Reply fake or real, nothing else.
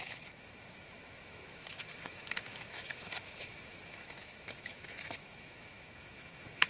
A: fake